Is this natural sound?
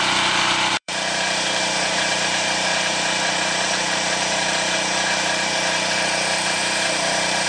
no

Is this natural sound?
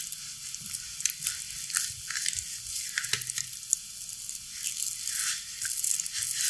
yes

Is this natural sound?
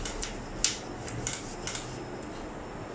yes